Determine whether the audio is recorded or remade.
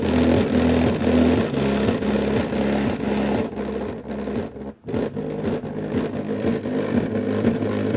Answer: recorded